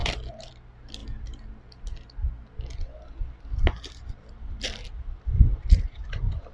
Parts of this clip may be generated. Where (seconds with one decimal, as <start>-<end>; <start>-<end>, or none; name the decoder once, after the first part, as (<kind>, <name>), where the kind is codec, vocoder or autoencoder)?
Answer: 0.0-0.5 (vocoder, BigVGAN v2); 5.5-6.5